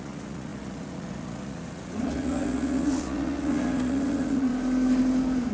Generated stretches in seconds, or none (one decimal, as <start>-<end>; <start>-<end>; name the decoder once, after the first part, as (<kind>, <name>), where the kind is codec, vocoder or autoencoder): 0.0-4.5 (vocoder, Vocos)